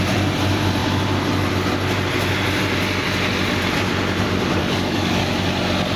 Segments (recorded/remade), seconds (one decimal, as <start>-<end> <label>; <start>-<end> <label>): 0.0-4.6 recorded; 4.6-5.3 remade; 5.3-6.0 recorded